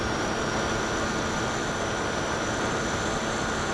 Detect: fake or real real